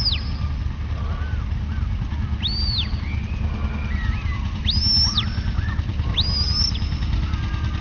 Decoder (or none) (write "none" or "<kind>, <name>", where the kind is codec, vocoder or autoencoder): none